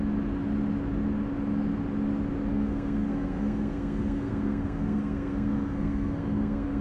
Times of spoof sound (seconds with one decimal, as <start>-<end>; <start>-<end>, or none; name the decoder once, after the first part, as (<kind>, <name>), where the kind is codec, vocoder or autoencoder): 2.5-6.8 (codec, SNAC)